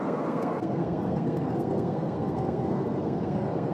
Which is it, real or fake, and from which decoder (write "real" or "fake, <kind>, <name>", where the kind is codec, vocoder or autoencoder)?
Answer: fake, codec, SNAC